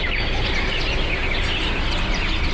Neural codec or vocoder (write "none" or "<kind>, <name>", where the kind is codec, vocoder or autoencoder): none